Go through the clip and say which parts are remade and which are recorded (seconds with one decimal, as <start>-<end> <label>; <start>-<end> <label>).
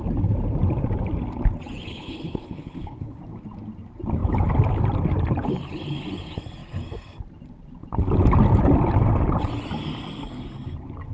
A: 0.0-1.9 recorded; 1.9-3.2 remade; 3.2-11.1 recorded